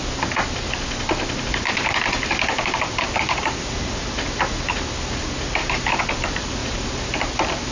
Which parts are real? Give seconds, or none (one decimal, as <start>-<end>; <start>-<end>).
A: 0.0-1.5; 2.1-2.5; 4.0-5.2; 6.0-6.6; 7.2-7.7